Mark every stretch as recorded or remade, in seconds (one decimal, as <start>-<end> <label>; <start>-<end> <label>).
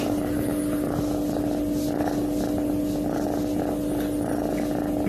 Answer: 0.0-5.1 recorded